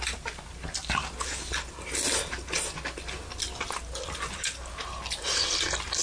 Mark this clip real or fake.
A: real